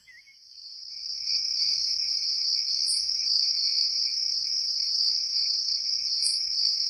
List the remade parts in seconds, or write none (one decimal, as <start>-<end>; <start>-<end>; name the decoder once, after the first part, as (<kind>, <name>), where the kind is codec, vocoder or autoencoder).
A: 0.0-5.4 (autoencoder, DAC-VAE); 5.9-6.9